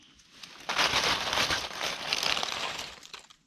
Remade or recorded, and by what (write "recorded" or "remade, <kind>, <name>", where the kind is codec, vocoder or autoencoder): recorded